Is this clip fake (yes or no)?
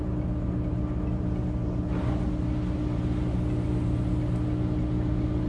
no